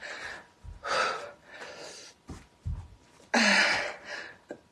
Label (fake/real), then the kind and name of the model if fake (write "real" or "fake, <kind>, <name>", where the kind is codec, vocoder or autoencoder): real